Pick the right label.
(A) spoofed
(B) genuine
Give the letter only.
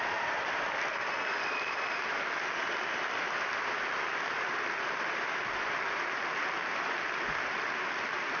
B